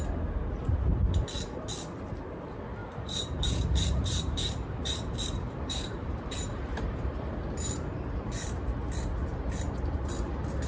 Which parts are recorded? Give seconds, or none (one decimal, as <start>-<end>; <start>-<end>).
0.0-2.8; 7.3-10.7